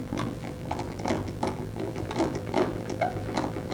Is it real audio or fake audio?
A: fake